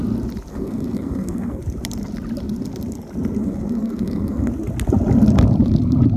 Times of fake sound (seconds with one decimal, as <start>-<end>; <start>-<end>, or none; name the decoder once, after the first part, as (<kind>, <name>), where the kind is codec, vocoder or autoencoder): 0.5-1.6 (codec, SNAC); 3.4-4.5

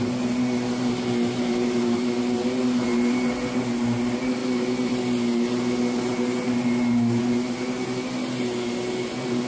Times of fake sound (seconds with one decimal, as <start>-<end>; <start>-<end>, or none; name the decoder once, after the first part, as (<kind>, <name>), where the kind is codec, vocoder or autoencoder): none